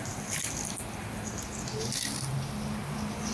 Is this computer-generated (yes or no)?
no